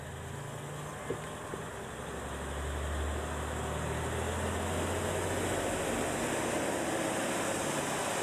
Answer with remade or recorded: recorded